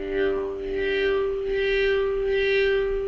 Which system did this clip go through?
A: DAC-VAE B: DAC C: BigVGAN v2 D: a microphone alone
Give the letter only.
D